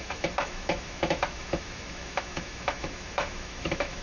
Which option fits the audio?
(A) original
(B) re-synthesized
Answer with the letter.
B